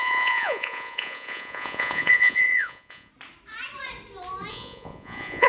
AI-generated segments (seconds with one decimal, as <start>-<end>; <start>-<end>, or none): 0.0-3.1; 4.5-5.5